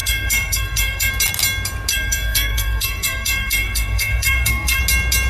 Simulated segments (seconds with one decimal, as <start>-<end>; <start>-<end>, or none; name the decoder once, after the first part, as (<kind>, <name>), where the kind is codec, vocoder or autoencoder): 0.0-1.1 (codec, SNAC); 1.9-4.8